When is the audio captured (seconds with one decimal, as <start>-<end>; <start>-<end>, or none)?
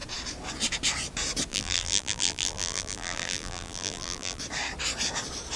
0.0-1.5; 4.4-5.6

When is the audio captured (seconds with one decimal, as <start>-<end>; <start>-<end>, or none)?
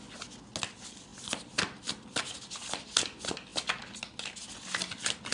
0.0-5.3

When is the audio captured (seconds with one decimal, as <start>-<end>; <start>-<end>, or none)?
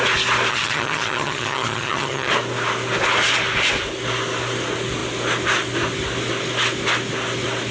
0.0-0.5; 2.3-7.7